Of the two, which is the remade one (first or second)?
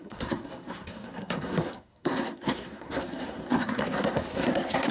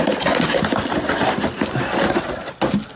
first